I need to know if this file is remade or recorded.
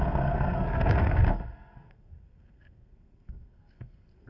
remade